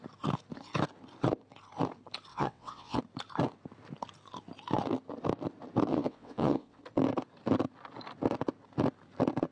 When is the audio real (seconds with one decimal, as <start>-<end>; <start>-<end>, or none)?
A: 0.0-2.3; 3.0-5.9; 6.8-9.5